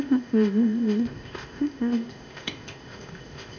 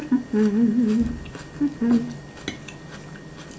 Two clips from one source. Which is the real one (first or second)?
second